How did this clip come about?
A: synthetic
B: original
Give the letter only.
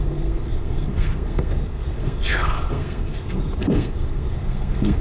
A